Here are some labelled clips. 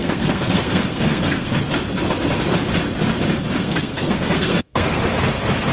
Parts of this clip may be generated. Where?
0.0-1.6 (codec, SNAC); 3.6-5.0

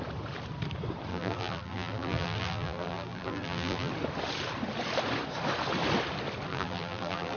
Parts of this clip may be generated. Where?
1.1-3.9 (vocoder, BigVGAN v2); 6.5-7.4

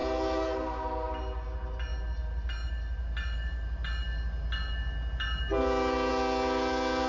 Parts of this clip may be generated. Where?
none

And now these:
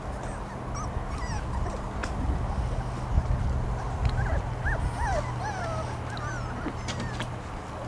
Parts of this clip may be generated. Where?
none

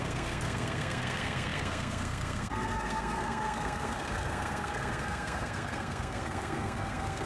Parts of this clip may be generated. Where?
0.0-7.3 (codec, SNAC)

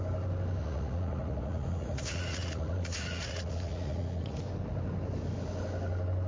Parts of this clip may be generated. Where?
0.6-4.4 (vocoder, Vocos)

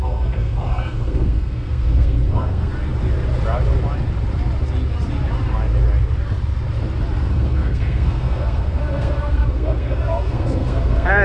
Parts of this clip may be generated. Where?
0.0-2.7 (codec, SNAC); 7.3-11.2